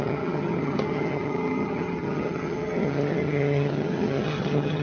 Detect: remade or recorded remade